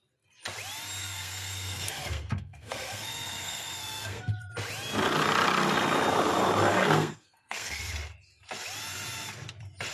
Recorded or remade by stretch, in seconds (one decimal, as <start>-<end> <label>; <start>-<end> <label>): 0.0-1.0 recorded; 1.0-4.3 remade; 4.3-6.7 recorded; 6.7-7.8 remade; 7.8-9.9 recorded